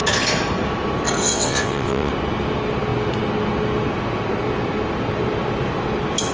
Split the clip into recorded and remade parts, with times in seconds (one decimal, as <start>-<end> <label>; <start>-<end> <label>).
0.0-1.2 recorded; 1.2-2.1 remade; 2.1-6.3 recorded